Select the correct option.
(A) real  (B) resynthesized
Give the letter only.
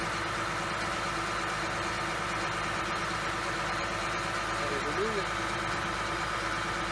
A